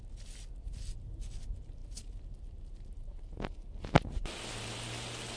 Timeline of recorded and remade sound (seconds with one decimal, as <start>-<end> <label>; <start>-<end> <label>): 0.0-5.4 recorded